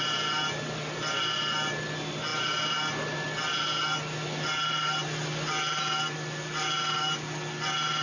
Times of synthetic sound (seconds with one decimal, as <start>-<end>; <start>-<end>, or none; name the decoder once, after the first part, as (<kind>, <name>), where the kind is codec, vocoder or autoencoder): none